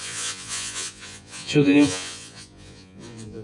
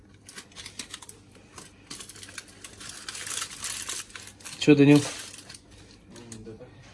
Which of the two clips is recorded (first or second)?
second